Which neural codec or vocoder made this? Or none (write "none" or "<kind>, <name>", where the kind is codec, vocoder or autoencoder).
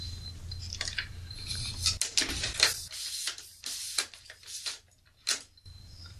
none